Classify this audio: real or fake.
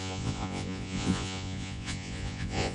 fake